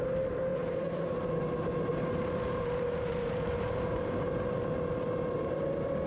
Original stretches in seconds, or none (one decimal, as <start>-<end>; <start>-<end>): 0.0-0.5; 1.4-1.9; 5.6-6.1